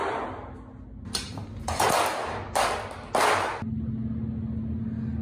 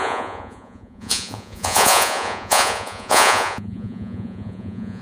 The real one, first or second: first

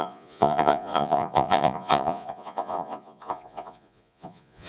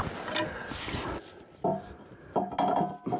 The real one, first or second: second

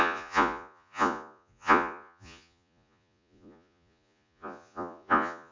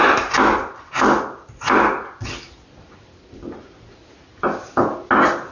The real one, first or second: second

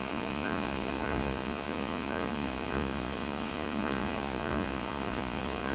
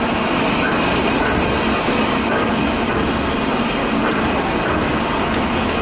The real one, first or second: second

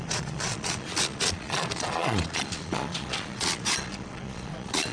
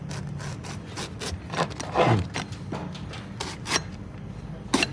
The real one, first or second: second